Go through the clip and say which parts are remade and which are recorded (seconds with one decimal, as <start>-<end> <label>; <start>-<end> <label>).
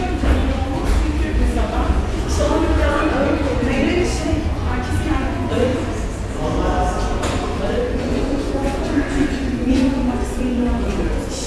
0.0-0.4 remade; 0.4-1.9 recorded; 1.9-5.7 remade; 5.7-7.1 recorded; 7.1-11.5 remade